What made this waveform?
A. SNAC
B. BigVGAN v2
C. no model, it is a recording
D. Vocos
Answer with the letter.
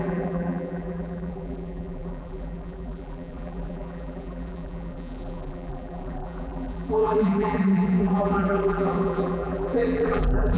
B